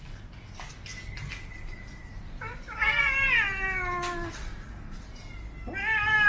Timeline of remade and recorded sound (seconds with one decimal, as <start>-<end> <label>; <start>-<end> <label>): 0.0-6.3 recorded